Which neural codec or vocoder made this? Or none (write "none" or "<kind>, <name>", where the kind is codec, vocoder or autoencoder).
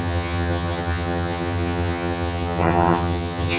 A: vocoder, HiFi-GAN